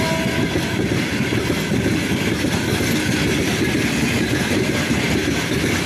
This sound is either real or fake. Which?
real